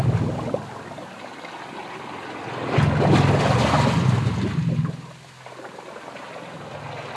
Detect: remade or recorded recorded